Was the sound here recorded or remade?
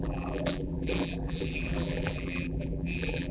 remade